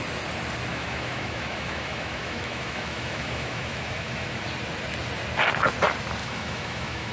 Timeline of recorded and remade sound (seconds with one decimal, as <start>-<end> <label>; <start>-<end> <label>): 0.0-0.7 recorded; 0.7-4.4 remade; 4.4-6.2 recorded; 6.2-7.1 remade